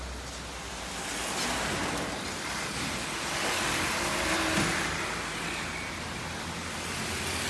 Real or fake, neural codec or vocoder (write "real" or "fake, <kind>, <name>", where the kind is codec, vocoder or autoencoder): real